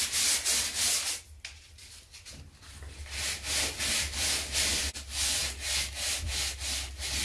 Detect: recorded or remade recorded